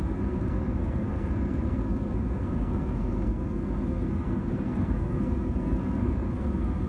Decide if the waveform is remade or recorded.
remade